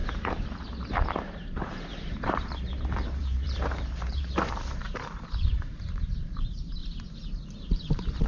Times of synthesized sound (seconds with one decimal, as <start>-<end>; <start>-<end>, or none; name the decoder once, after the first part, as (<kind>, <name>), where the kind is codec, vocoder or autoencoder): 0.0-6.8 (vocoder, BigVGAN v2); 7.6-8.3

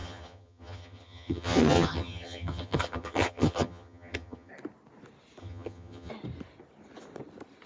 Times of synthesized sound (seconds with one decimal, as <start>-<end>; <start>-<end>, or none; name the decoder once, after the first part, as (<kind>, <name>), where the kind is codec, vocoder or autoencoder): 0.0-4.5 (vocoder, HiFi-GAN); 5.4-6.1

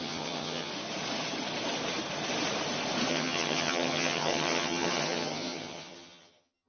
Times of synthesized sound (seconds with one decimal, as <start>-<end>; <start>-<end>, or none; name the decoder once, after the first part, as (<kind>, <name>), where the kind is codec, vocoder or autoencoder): 0.0-0.7 (vocoder, HiFi-GAN); 3.1-6.7

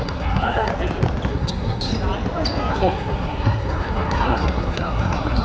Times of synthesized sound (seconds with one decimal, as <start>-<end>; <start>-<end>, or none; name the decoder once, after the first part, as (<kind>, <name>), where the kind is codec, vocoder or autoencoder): 0.0-0.7 (codec, SNAC); 1.3-1.9; 2.7-5.4

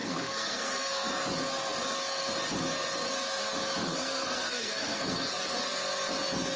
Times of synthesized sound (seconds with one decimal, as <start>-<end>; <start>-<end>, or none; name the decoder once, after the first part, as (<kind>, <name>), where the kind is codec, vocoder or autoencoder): 0.0-1.1 (codec, SNAC); 3.8-5.4

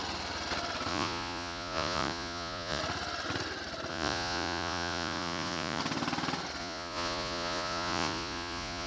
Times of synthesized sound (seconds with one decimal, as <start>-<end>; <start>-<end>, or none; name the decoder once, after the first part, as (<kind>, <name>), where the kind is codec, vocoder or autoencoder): 0.9-2.8 (vocoder, Vocos); 3.9-5.8; 6.6-8.9

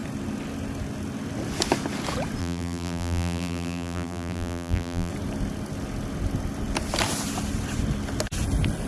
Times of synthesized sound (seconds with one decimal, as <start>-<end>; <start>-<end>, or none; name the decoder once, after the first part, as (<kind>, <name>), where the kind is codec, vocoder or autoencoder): 2.4-5.1 (vocoder, BigVGAN v2)

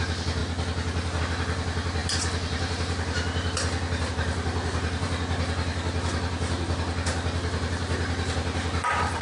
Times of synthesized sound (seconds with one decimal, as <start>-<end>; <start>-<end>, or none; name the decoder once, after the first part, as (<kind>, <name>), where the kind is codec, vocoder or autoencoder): 0.0-0.4 (vocoder, BigVGAN v2); 1.2-9.2